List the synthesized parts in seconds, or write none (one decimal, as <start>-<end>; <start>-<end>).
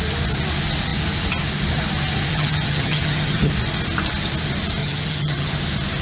2.3-3.5; 4.8-5.5